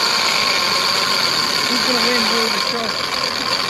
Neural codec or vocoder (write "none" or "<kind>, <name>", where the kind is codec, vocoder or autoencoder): none